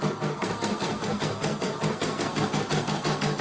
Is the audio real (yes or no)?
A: no